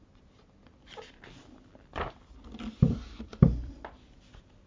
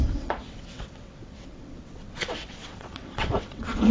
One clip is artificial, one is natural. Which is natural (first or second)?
first